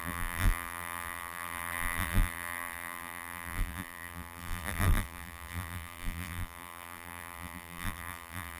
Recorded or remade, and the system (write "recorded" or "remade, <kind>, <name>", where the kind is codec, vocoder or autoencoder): remade, vocoder, BigVGAN v2